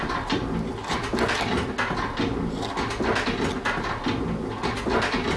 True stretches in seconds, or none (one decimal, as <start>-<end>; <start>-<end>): 0.0-5.4